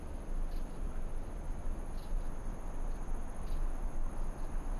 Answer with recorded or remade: recorded